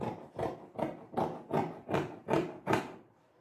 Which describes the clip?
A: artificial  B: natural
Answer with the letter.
B